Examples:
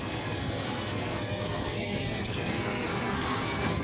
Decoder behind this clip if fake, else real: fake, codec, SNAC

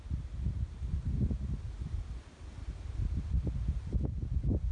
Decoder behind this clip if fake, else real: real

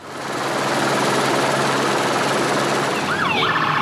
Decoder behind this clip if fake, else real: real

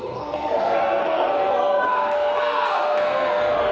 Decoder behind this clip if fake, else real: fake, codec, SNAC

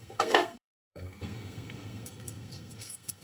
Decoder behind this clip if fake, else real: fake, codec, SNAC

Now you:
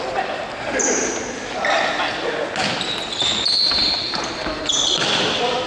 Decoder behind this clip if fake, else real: real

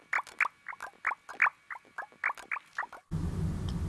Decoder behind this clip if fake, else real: real